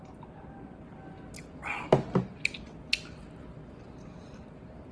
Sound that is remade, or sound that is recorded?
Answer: recorded